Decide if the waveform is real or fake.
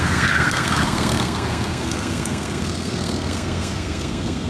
fake